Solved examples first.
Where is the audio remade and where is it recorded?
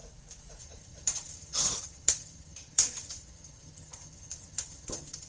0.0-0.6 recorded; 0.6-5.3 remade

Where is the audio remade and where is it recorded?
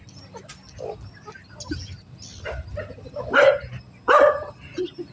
0.0-5.1 recorded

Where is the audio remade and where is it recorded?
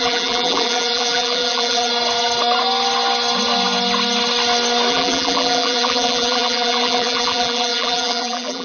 0.0-1.9 remade; 1.9-4.9 recorded; 4.9-8.6 remade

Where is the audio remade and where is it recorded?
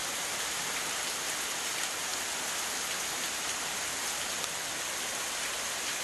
0.0-6.0 recorded